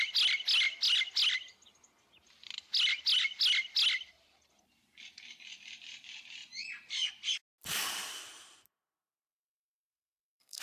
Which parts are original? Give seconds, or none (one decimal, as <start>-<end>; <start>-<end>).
0.0-9.9